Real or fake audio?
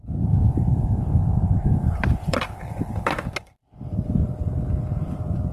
fake